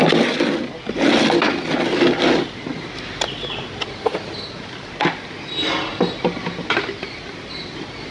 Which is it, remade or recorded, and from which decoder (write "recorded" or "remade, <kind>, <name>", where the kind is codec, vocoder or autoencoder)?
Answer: recorded